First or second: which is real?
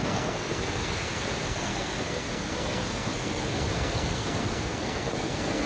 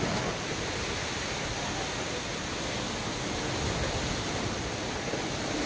second